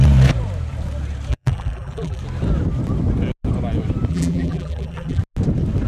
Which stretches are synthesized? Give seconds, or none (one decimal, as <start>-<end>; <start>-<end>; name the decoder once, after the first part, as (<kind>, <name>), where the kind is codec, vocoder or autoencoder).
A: 1.3-2.2 (vocoder, BigVGAN v2); 4.1-5.2